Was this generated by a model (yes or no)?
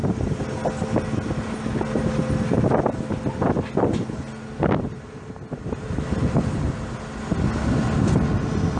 no